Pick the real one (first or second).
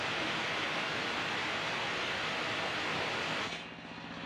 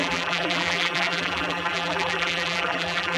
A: first